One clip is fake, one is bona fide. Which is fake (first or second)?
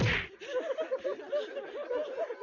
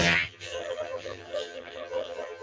second